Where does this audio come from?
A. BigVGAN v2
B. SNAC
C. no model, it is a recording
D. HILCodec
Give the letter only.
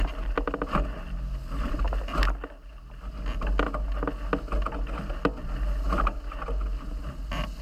C